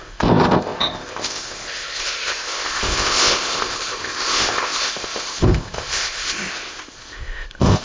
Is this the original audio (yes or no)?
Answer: no